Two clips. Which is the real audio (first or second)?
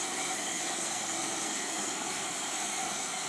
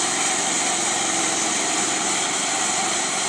second